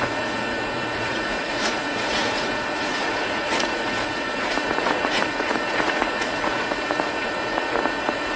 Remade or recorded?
remade